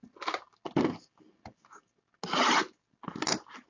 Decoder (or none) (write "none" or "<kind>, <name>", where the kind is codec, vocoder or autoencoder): none